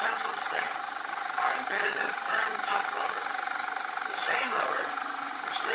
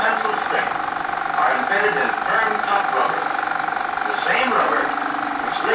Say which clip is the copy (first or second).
first